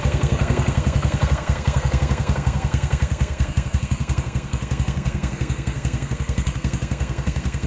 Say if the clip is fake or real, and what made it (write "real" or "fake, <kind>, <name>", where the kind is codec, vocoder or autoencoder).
fake, codec, SNAC